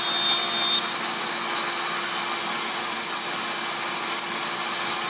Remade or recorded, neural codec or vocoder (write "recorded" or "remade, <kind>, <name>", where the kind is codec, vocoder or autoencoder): recorded